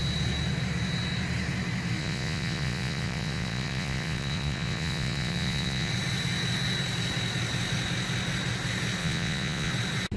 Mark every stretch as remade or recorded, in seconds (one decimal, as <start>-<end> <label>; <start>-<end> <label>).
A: 0.0-2.0 recorded; 2.0-5.9 remade; 5.9-9.0 recorded; 9.0-9.7 remade; 9.7-10.2 recorded